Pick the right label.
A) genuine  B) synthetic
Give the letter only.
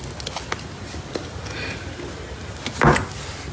A